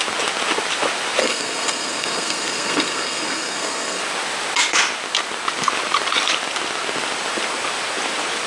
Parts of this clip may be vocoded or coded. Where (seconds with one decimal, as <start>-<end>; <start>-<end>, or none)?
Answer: 1.2-4.0